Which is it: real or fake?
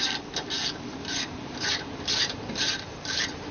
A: fake